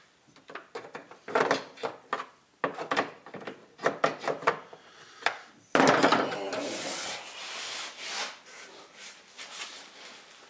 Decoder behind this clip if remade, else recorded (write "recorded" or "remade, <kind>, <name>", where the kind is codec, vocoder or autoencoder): recorded